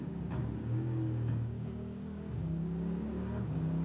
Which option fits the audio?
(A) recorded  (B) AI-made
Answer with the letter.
B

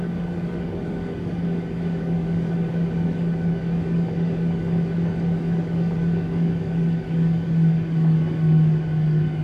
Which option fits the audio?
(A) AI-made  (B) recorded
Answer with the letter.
A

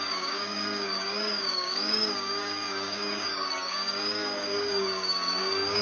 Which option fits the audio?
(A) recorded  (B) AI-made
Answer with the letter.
B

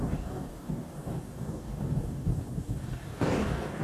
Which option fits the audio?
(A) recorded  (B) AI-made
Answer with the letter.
B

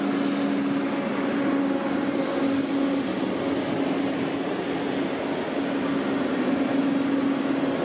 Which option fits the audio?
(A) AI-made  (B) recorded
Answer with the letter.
B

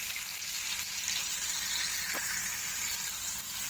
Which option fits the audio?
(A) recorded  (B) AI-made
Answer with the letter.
A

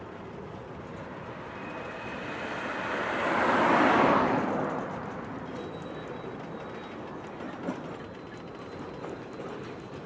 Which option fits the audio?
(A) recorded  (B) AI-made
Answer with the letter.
A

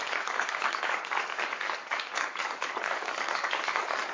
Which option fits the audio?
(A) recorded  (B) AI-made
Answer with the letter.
B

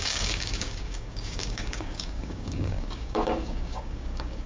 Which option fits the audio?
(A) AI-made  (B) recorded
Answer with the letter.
A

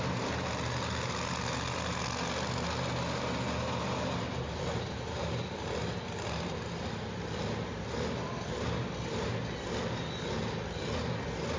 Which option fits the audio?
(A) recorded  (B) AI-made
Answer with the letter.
A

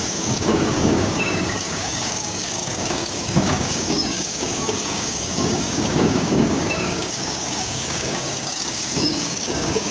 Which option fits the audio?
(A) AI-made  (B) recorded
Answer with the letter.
A